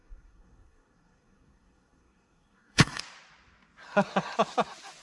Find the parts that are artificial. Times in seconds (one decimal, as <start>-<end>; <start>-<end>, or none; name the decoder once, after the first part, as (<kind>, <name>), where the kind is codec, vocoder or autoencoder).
0.0-3.0 (codec, SNAC)